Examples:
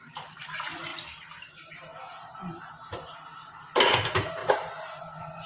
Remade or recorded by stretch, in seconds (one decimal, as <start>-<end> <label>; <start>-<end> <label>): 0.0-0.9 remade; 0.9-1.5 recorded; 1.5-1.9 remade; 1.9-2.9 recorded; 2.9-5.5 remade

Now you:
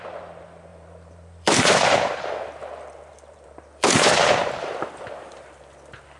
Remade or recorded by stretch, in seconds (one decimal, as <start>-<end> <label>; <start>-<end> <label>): 0.0-0.7 recorded; 0.7-2.2 remade; 2.2-3.1 recorded; 3.1-5.6 remade; 5.6-6.2 recorded

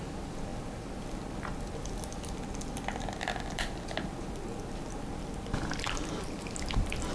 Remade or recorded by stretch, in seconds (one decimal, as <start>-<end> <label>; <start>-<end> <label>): 0.0-7.1 recorded

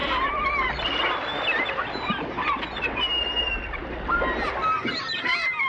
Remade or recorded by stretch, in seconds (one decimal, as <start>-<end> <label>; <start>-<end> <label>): 0.0-5.7 recorded

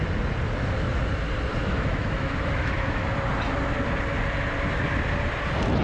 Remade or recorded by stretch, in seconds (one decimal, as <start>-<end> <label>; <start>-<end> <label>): 0.0-1.6 recorded; 1.6-3.1 remade; 3.1-5.8 recorded

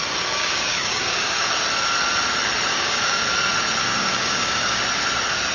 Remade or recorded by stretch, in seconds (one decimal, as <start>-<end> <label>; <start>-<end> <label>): 0.0-0.4 recorded; 0.4-1.5 remade; 1.5-2.7 recorded; 2.7-3.2 remade; 3.2-3.8 recorded; 3.8-4.8 remade; 4.8-5.5 recorded

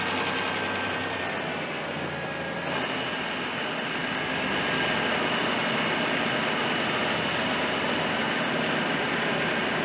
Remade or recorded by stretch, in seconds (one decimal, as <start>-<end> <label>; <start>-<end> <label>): 0.0-9.8 recorded